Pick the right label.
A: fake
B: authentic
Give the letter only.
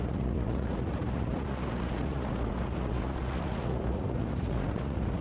A